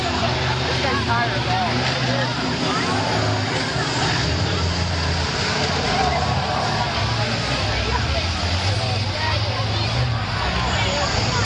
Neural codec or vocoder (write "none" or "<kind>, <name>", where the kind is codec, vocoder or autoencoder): none